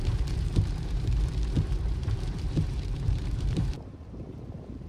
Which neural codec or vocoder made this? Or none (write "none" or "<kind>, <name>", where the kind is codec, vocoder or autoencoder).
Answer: vocoder, BigVGAN v2